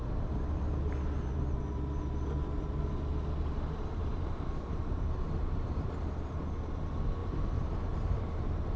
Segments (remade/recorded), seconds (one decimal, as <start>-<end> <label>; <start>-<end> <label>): 0.0-4.0 recorded; 4.0-5.9 remade; 5.9-7.2 recorded; 7.2-8.8 remade